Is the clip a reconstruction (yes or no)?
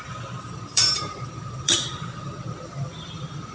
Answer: yes